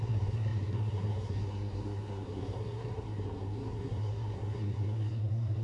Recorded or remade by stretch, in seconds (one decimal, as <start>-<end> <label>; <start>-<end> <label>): 0.0-5.6 remade